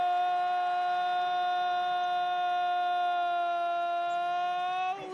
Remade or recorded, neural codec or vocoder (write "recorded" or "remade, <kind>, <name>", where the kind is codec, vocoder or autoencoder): recorded